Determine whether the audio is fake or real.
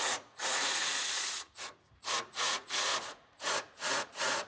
fake